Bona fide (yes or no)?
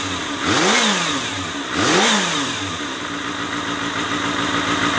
yes